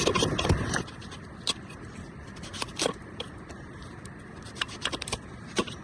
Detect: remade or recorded recorded